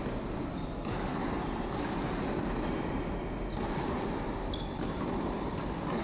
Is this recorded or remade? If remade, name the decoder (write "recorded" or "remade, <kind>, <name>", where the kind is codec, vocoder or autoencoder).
recorded